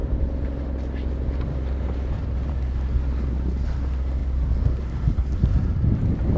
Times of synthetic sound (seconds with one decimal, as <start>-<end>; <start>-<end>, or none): none